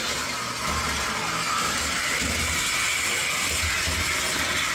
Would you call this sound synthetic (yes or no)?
no